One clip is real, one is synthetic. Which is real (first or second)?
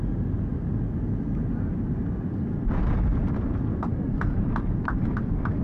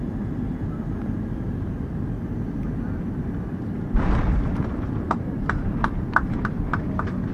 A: first